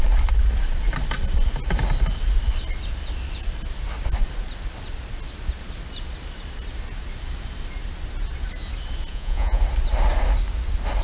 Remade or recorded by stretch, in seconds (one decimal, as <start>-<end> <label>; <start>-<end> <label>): 0.0-9.1 recorded; 9.1-9.6 remade; 9.6-11.0 recorded